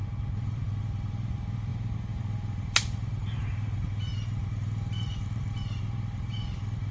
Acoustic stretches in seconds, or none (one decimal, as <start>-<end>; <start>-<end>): none